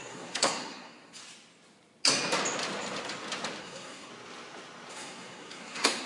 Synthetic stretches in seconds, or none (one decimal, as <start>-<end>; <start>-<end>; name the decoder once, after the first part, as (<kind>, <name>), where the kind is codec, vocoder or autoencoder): 0.0-1.2 (codec, SNAC); 3.6-4.1; 4.9-6.1

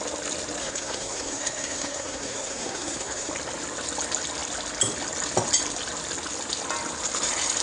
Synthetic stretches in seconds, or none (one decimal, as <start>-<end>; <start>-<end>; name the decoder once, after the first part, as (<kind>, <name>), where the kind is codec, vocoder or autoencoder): 0.6-3.3 (codec, SNAC)